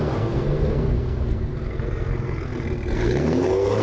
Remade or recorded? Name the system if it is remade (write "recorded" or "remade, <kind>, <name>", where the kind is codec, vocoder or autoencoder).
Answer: remade, codec, SNAC